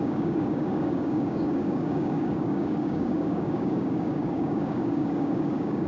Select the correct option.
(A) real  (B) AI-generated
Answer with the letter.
B